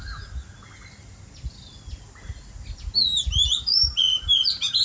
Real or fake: real